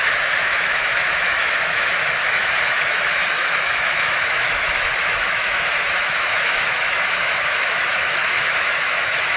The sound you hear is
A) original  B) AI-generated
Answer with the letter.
B